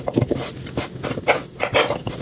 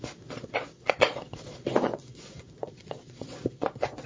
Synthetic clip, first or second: second